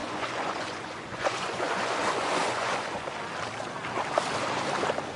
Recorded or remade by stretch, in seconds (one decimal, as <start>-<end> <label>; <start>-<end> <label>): 0.0-3.1 remade; 3.1-5.2 recorded